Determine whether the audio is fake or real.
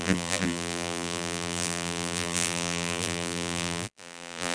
fake